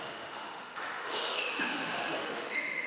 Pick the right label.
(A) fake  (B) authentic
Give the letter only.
A